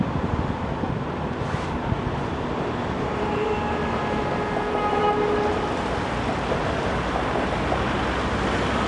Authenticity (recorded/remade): recorded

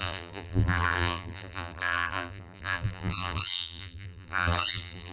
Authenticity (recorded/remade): remade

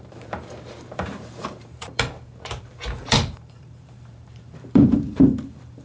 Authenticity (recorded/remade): remade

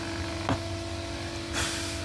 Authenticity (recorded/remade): recorded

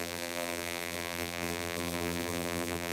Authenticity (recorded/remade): remade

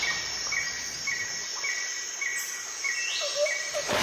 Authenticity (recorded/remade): recorded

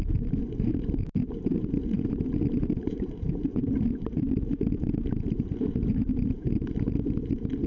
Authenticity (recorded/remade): remade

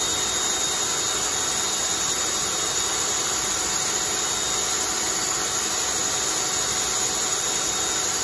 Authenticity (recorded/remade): recorded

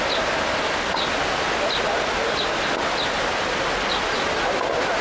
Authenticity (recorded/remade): remade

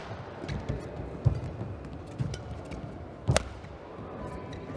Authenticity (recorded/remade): recorded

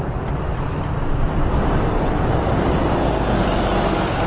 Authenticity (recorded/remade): remade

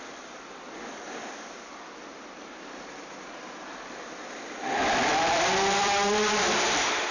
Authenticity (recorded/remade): remade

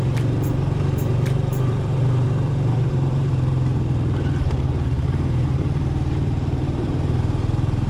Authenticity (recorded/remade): remade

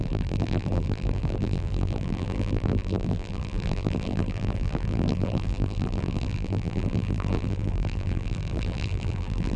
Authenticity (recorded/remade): remade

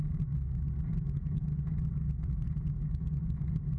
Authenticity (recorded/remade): recorded